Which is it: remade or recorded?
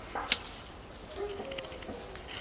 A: recorded